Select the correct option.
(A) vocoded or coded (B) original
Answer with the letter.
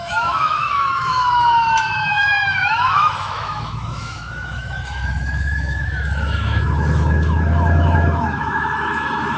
A